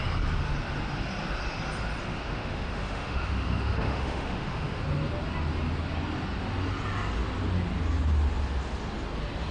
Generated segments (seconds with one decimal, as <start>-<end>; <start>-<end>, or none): 2.1-4.8